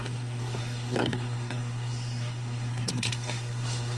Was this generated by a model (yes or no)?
yes